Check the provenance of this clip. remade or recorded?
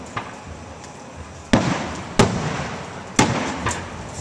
recorded